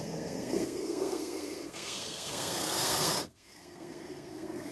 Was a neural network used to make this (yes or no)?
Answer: yes